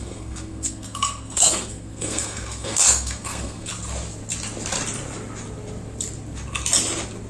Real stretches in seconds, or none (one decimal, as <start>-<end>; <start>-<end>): 3.7-7.3